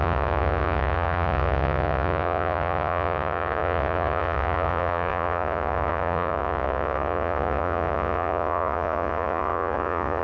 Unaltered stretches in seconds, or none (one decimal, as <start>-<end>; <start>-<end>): none